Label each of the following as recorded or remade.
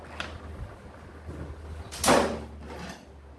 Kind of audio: recorded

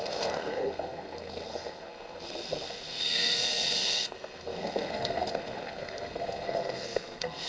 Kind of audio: remade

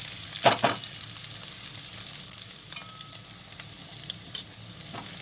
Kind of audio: recorded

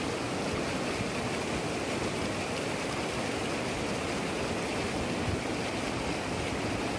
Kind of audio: recorded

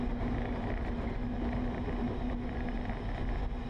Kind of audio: recorded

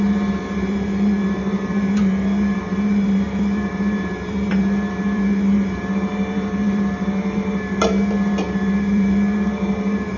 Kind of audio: remade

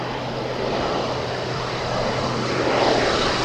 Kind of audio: recorded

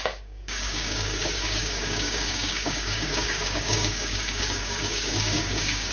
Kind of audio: remade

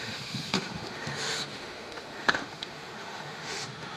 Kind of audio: remade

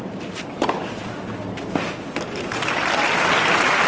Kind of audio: recorded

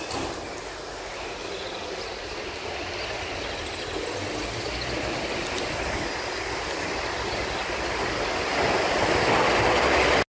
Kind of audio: recorded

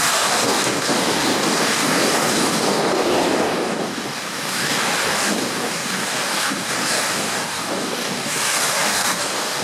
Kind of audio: remade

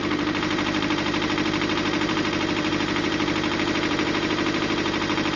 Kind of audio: remade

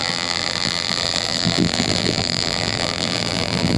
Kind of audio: remade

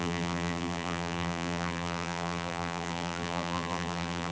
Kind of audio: remade